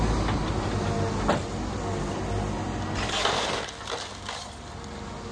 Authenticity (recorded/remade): recorded